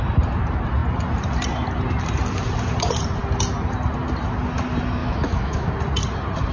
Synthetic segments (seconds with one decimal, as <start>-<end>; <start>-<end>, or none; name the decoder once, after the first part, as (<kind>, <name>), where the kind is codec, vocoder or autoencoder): 5.0-5.7 (autoencoder, DAC-VAE)